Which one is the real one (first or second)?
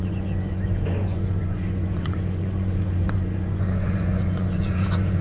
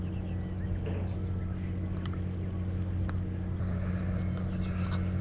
second